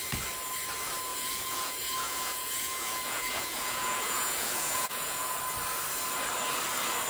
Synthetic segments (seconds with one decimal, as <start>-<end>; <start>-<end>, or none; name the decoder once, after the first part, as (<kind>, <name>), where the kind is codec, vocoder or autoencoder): 1.1-5.4 (vocoder, Vocos)